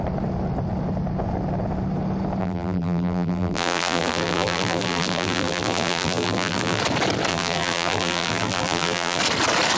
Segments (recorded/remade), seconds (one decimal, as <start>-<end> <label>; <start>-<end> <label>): 0.0-2.4 recorded; 2.4-6.8 remade; 6.8-7.3 recorded; 7.3-9.2 remade; 9.2-9.8 recorded